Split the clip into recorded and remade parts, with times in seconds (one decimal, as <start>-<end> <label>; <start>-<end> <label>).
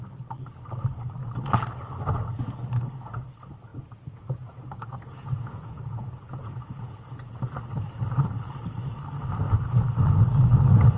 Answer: 0.0-3.7 recorded; 3.7-7.2 remade; 7.2-11.0 recorded